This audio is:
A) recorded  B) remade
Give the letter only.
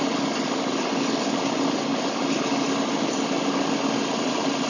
A